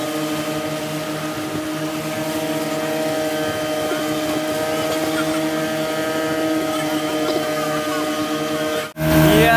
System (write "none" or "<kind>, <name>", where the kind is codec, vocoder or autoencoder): none